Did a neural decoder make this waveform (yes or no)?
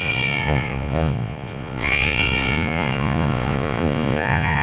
yes